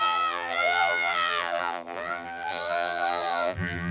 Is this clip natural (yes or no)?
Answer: no